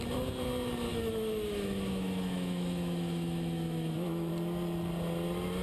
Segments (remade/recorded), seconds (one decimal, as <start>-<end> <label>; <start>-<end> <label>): 0.0-0.9 recorded; 0.9-4.3 remade; 4.3-5.6 recorded